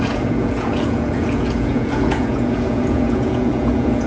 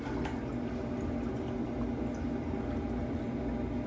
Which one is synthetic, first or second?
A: first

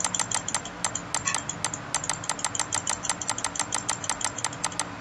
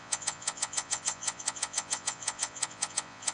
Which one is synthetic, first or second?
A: second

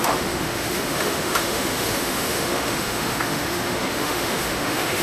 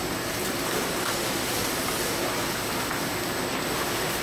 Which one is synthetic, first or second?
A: first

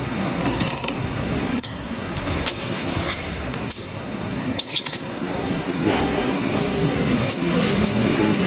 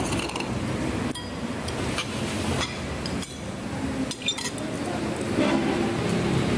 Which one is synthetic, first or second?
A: first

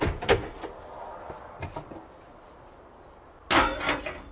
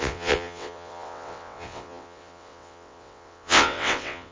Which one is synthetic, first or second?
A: second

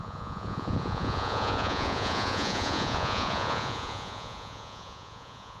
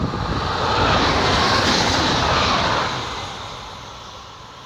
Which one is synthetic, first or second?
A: first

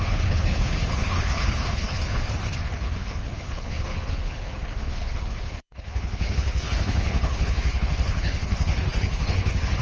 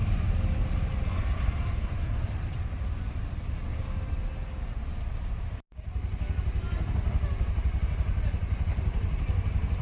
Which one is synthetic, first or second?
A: first